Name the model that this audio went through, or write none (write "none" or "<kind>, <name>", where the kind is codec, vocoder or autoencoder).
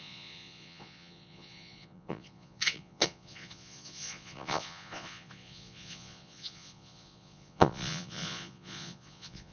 vocoder, Vocos